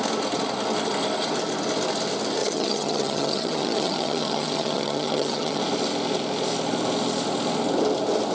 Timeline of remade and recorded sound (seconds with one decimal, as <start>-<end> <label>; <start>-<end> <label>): 0.0-2.4 recorded; 2.4-5.6 remade; 5.6-8.3 recorded